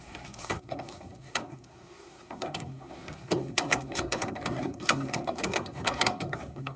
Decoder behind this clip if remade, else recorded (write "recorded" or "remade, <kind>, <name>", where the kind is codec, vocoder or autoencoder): remade, codec, SNAC